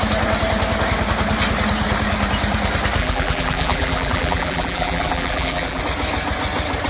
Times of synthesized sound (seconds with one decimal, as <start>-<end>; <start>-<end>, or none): 3.0-5.8